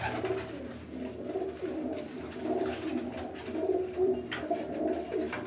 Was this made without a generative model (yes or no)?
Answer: yes